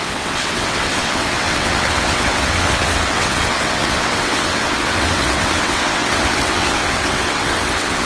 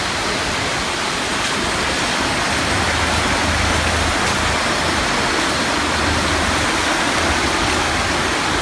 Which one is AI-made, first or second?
first